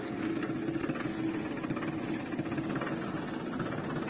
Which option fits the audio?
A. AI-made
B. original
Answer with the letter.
B